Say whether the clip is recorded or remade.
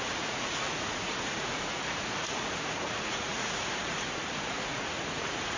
remade